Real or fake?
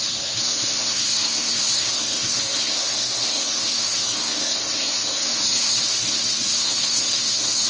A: fake